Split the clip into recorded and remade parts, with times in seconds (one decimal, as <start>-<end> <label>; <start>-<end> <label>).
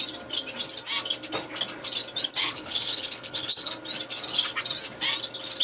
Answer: 0.0-2.4 recorded; 2.4-3.7 remade; 3.7-5.6 recorded